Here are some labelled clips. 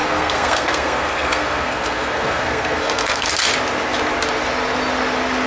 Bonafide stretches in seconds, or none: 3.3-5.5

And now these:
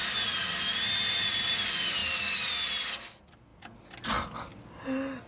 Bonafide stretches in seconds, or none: 0.0-5.3

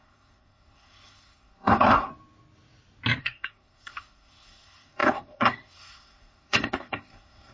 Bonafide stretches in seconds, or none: 2.1-3.2

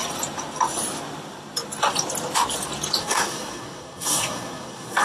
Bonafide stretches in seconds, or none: 0.0-3.0

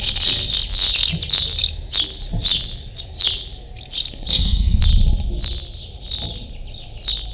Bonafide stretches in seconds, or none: 0.0-4.3; 4.8-7.3

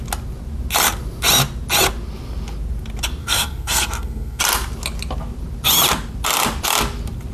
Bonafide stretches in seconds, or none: 0.0-3.2; 4.4-7.3

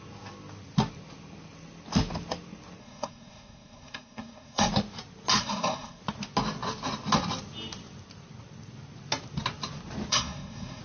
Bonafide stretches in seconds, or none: 0.0-2.8; 4.7-5.4; 6.0-10.1

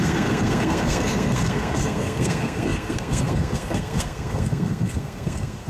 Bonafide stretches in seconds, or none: none